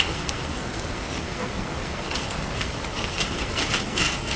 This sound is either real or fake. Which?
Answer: fake